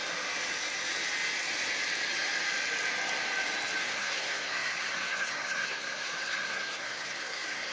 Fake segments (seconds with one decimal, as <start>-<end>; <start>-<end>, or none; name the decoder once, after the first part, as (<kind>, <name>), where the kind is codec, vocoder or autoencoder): 3.8-7.7 (codec, SNAC)